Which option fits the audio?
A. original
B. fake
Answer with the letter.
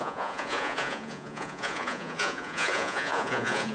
B